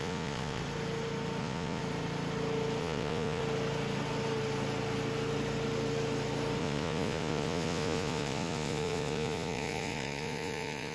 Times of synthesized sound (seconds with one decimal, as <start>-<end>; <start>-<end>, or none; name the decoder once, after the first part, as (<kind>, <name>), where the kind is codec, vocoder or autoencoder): 0.0-0.6 (vocoder, Vocos); 1.4-1.8; 2.8-3.4; 6.6-10.9